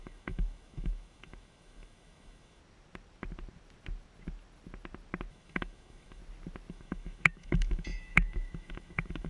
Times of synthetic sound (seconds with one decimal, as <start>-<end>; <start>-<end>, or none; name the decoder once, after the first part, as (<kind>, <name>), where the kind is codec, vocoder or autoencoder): 0.0-2.6 (autoencoder, DAC-VAE); 5.3-6.2; 6.7-9.3

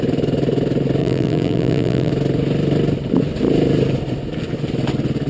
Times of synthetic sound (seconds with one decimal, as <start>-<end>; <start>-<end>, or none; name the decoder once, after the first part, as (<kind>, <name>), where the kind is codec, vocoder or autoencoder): 1.0-2.1 (vocoder, BigVGAN v2)

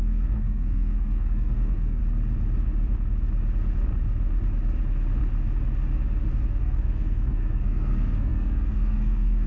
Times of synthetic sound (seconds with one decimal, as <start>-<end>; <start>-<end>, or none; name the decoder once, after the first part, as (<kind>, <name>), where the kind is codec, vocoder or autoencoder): 0.0-2.0 (codec, SNAC); 6.6-9.5

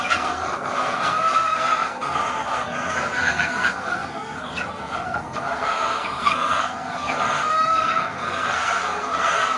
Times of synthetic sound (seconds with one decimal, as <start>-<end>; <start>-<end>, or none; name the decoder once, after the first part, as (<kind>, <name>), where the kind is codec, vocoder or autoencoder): 0.0-9.6 (codec, SNAC)

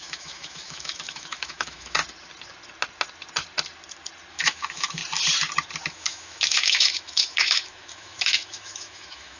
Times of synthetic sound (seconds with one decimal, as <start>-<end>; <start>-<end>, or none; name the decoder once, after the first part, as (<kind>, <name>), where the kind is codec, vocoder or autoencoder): 0.0-2.0 (autoencoder, DAC-VAE); 4.3-5.0; 5.9-9.4